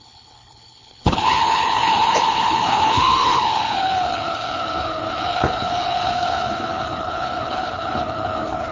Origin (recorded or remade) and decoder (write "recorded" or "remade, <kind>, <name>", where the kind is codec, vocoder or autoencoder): remade, codec, HILCodec